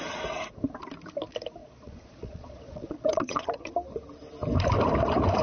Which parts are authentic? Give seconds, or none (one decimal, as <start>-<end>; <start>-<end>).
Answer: 0.0-1.6; 3.7-5.4